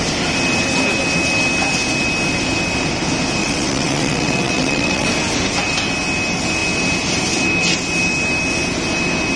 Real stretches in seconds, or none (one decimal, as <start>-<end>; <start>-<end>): 0.0-3.4; 5.1-9.4